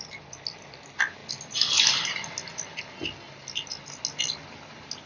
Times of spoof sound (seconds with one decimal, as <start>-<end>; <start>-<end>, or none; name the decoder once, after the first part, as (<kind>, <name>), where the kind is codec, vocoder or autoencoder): none